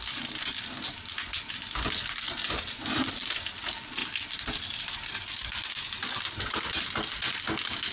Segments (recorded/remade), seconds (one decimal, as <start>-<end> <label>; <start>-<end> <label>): 0.0-7.9 recorded